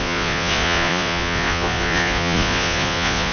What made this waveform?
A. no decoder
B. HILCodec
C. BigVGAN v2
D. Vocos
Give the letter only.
D